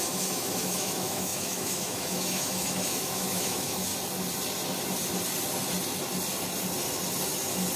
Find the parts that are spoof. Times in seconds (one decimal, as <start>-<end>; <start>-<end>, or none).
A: 0.0-3.9